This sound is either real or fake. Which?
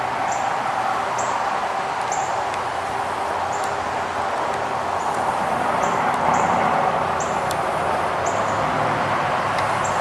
real